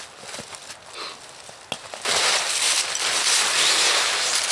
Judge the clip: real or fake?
real